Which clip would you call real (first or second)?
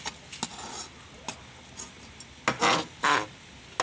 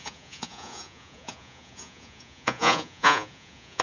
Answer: first